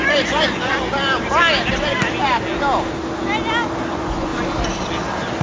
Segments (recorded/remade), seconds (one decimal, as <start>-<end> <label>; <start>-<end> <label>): 0.0-0.7 remade; 0.7-3.9 recorded; 3.9-4.3 remade; 4.3-5.4 recorded